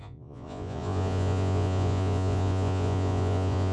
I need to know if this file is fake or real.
fake